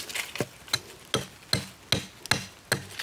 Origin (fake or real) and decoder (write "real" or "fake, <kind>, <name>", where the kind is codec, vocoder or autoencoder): real